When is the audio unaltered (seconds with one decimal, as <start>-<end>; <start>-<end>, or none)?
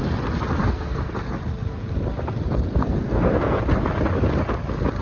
0.0-0.6; 1.1-2.8; 3.6-5.0